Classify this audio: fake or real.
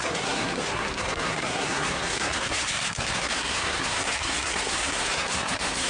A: fake